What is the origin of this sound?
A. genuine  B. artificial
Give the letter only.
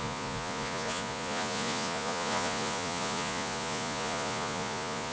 B